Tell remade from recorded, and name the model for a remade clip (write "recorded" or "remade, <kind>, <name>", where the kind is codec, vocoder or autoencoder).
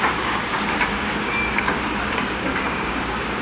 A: remade, codec, DAC